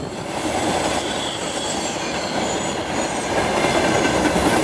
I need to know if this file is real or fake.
real